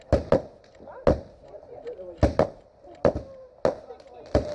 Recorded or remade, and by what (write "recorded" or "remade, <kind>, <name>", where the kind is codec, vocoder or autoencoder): recorded